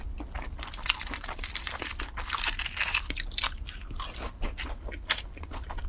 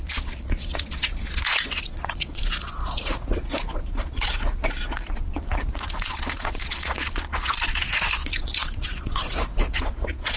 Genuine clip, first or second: first